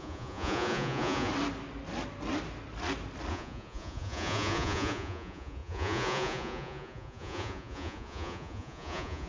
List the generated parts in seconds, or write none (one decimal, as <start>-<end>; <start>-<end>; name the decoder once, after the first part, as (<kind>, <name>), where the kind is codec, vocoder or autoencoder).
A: 0.0-1.3 (vocoder, Vocos); 3.3-9.3